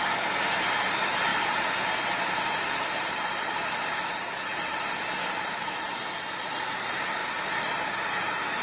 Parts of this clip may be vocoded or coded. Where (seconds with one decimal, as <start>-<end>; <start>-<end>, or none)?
7.2-7.9